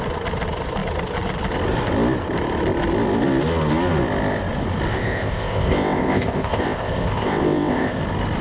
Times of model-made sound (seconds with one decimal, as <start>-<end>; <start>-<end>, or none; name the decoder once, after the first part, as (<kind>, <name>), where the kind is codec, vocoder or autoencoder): 4.9-8.0 (codec, ZipCodec)